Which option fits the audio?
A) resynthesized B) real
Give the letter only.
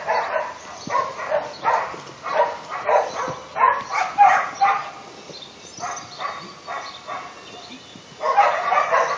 B